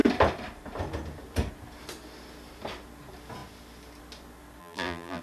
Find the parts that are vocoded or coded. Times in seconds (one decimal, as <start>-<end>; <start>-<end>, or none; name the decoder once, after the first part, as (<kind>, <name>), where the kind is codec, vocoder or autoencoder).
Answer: 4.6-5.2 (vocoder, BigVGAN v2)